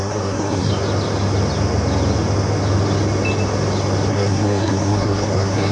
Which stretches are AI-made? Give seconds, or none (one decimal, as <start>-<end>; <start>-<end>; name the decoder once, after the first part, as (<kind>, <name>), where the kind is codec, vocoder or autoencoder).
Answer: 0.0-0.7 (codec, SNAC); 4.1-5.7